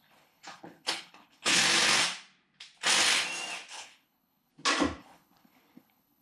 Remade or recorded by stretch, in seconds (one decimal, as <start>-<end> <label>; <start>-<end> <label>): 0.0-1.6 remade; 1.6-3.7 recorded; 3.7-4.5 remade; 4.5-5.0 recorded; 5.0-6.2 remade